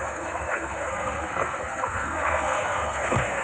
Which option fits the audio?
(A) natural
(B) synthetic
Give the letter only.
B